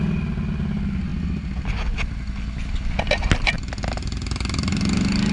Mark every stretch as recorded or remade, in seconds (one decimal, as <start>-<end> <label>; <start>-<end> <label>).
0.0-5.3 recorded